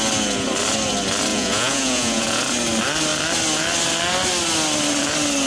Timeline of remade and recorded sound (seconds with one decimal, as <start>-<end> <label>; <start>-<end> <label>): 0.0-1.3 recorded; 1.3-2.4 remade; 2.4-5.5 recorded